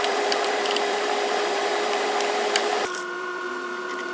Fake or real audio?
fake